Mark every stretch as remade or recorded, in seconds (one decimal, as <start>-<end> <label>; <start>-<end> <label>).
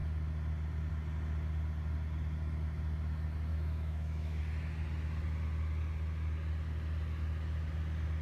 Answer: 0.0-3.5 recorded; 3.5-4.4 remade; 4.4-8.2 recorded